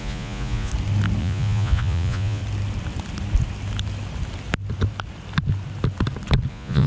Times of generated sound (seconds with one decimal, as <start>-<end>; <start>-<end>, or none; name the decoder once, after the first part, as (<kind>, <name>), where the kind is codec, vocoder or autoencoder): 0.0-0.7 (vocoder, Vocos); 1.2-2.4; 6.5-6.9